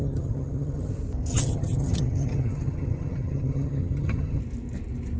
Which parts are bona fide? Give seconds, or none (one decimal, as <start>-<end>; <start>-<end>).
0.9-1.3; 4.4-5.2